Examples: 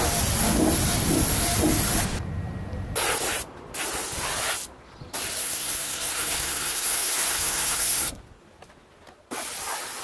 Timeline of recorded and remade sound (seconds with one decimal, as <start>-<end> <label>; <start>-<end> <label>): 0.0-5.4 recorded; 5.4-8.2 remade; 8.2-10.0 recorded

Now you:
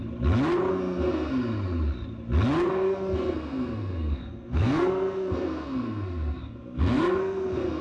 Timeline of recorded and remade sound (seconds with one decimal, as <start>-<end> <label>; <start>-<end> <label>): 0.0-0.7 recorded; 0.7-1.3 remade; 1.3-2.7 recorded; 2.7-7.8 remade

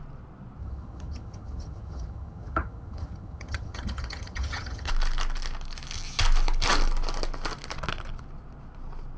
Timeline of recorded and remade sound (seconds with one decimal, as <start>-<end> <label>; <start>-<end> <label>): 0.0-0.6 recorded; 0.6-4.9 remade; 4.9-9.2 recorded

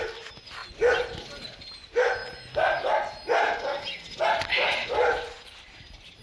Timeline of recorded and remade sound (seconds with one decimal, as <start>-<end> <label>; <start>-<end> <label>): 0.0-2.2 remade; 2.2-4.1 recorded; 4.1-6.2 remade